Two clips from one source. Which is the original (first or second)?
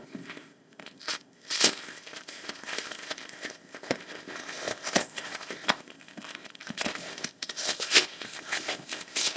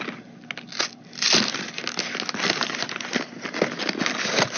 second